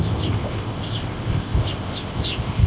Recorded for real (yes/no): no